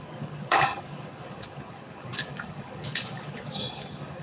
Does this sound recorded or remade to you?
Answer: remade